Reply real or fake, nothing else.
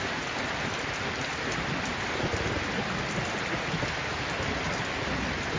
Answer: real